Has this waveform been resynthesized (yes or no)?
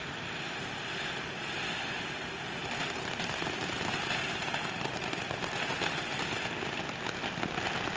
no